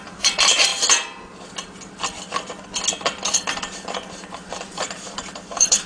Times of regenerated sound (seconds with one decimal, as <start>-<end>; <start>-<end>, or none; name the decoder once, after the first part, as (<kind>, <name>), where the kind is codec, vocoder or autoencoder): 0.0-0.7 (vocoder, BigVGAN v2); 2.9-5.9